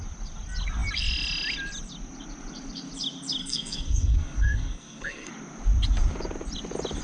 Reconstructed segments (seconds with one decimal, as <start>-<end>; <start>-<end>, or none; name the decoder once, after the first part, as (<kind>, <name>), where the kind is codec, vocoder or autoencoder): 3.4-5.3 (codec, SNAC)